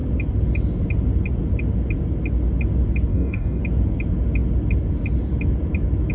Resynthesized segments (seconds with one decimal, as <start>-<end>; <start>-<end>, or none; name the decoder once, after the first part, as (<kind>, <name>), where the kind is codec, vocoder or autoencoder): 3.1-3.6 (codec, DAC)